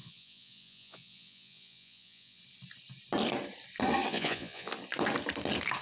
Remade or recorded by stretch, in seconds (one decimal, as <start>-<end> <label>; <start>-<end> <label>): 0.0-2.4 remade; 2.4-4.1 recorded; 4.1-4.7 remade; 4.7-5.8 recorded